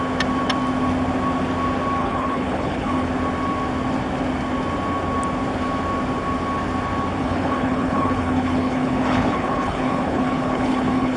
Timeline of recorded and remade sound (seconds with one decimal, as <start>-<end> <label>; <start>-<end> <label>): 0.0-2.0 recorded; 2.0-3.1 remade; 3.1-7.2 recorded; 7.2-11.2 remade